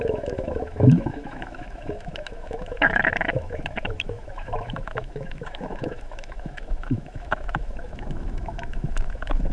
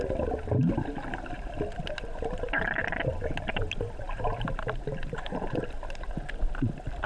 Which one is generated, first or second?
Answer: first